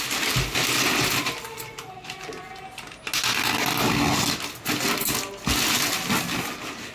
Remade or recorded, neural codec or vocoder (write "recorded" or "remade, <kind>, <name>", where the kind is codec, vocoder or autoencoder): recorded